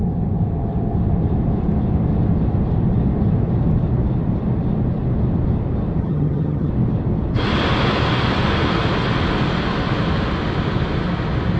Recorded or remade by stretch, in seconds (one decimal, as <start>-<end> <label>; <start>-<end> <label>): 0.0-6.0 recorded; 6.0-6.7 remade; 6.7-11.6 recorded